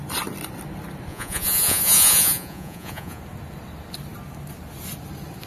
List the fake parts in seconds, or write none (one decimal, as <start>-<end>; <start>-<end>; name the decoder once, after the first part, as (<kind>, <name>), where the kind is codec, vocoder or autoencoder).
1.1-3.2 (vocoder, Vocos)